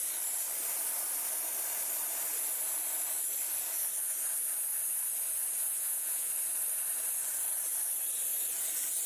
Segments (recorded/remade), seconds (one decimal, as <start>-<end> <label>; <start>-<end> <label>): 0.0-5.7 recorded; 5.7-6.3 remade; 6.3-9.1 recorded